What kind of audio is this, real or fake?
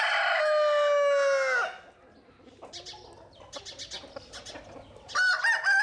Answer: real